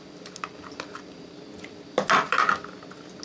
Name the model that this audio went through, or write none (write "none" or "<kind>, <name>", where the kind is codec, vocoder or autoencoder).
none